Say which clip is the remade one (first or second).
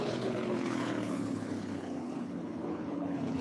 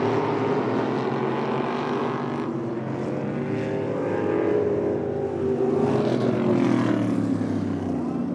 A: first